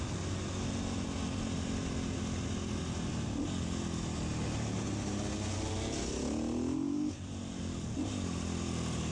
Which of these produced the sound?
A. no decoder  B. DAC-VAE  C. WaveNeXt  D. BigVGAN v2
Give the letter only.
A